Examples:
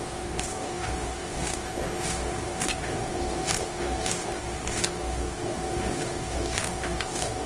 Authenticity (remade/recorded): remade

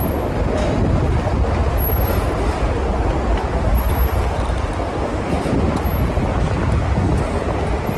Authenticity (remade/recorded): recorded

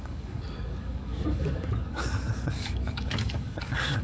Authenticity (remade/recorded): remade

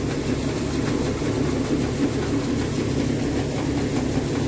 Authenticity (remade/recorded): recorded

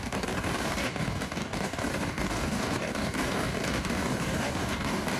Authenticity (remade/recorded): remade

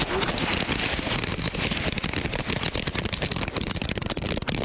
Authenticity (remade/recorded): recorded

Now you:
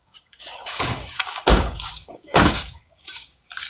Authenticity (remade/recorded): remade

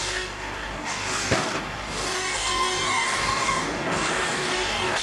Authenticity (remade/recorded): remade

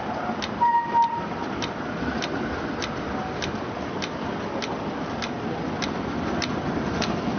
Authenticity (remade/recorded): recorded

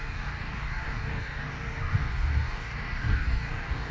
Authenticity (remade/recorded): remade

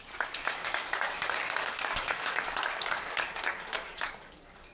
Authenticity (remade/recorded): remade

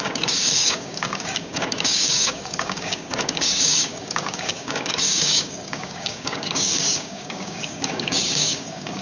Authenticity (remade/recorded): remade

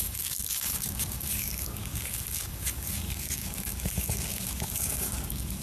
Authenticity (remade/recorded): remade